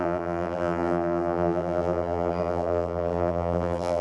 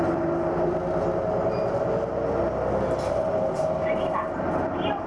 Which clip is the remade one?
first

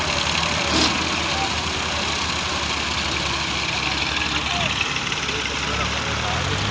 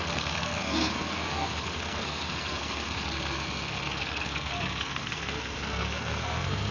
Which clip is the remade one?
second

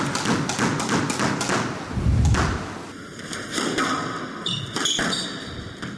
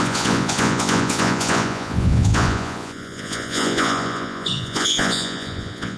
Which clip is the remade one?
second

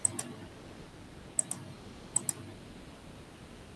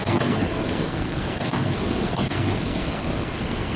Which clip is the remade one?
second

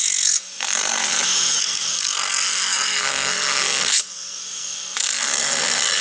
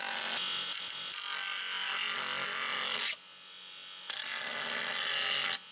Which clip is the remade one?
first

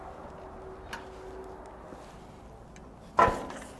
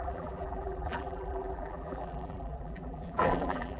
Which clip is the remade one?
second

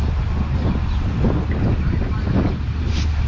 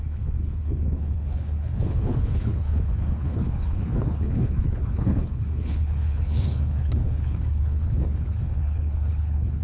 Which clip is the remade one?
second